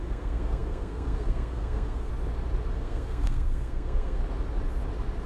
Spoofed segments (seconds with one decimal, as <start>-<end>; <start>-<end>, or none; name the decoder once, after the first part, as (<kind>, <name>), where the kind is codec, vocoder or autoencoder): 0.0-2.1 (codec, SNAC); 2.7-4.2